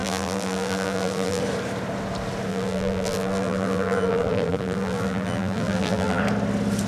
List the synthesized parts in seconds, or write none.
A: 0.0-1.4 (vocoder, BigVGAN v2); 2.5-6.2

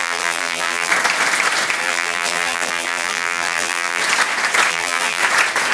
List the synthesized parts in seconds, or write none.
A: 0.0-0.9 (vocoder, BigVGAN v2); 1.8-4.0; 4.7-5.2